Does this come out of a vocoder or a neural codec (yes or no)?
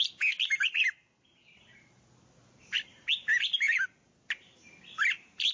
no